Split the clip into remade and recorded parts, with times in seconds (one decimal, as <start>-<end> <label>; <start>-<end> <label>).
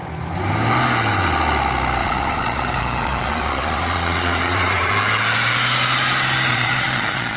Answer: 0.0-2.0 recorded; 2.0-4.9 remade; 4.9-6.5 recorded; 6.5-7.4 remade